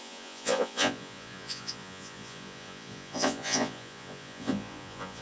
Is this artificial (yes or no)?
yes